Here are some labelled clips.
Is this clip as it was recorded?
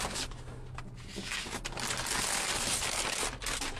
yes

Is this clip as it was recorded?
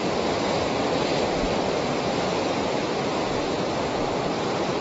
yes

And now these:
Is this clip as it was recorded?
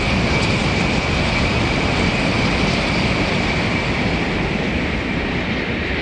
yes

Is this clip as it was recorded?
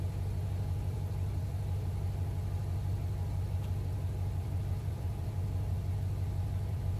no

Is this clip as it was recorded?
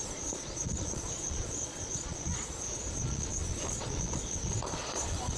no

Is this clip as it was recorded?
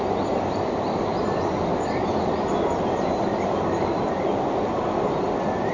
yes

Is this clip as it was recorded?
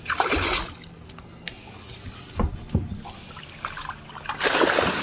yes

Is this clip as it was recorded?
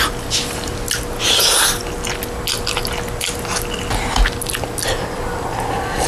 yes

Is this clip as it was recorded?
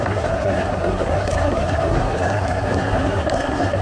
no